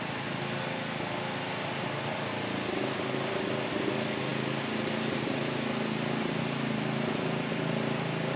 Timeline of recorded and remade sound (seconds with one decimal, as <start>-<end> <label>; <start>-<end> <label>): 0.0-8.4 recorded